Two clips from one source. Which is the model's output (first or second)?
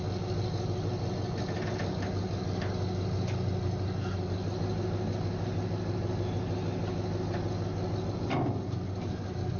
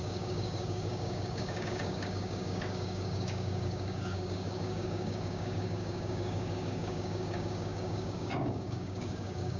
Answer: second